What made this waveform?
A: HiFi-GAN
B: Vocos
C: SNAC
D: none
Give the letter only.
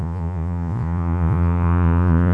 B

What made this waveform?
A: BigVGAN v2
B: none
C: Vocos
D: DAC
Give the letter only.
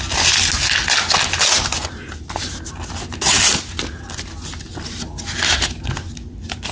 B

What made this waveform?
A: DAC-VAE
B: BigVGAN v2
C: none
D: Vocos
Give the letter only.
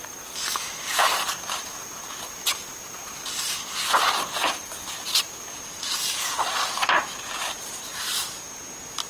C